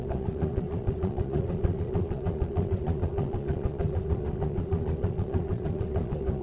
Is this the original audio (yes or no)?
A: no